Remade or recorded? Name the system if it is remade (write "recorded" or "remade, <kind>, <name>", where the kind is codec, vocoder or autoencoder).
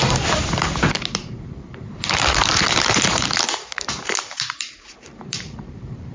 remade, vocoder, BigVGAN v2